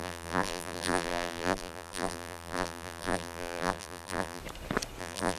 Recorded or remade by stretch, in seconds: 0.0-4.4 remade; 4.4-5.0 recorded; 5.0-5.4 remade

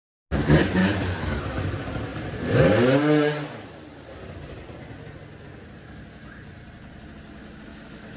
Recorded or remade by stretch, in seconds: 0.0-0.8 recorded; 0.8-1.4 remade; 1.4-7.7 recorded; 7.7-8.2 remade

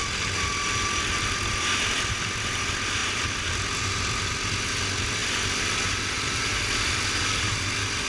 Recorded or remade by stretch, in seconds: 0.0-5.2 recorded; 5.2-7.6 remade; 7.6-8.1 recorded

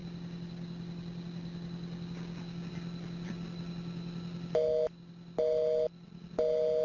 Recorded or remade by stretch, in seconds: 0.0-6.8 recorded

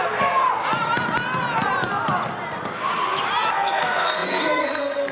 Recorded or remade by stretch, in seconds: 0.0-0.4 remade; 0.4-3.5 recorded; 3.5-5.1 remade

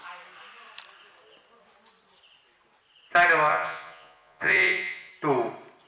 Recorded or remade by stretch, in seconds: 0.0-3.5 recorded; 3.5-5.1 remade; 5.1-5.9 recorded

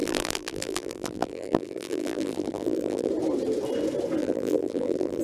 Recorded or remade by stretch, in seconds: 0.0-3.1 remade; 3.1-4.2 recorded; 4.2-5.2 remade

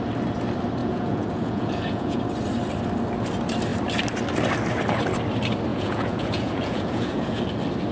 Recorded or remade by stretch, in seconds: 0.0-0.8 recorded; 0.8-2.2 remade; 2.2-5.7 recorded; 5.7-7.4 remade; 7.4-7.9 recorded